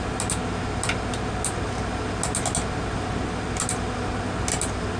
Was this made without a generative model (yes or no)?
yes